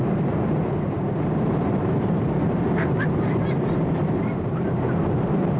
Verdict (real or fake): fake